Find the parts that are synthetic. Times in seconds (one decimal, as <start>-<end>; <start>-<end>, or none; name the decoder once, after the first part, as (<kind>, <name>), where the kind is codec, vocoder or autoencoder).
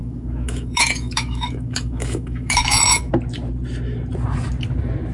0.0-3.1 (autoencoder, DAC-VAE)